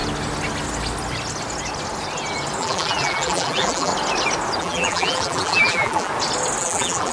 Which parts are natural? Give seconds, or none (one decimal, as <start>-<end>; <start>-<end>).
0.0-2.6; 3.9-4.6; 6.1-6.6